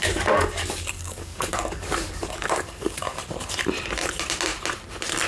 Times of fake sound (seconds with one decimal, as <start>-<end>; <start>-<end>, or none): 0.0-3.2